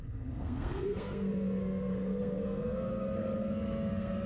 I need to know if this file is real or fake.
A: fake